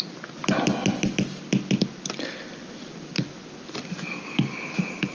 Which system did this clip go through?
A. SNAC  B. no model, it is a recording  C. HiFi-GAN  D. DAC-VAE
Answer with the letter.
B